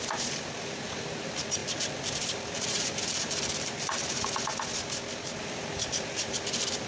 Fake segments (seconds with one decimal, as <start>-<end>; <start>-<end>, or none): 0.0-4.5; 5.4-6.9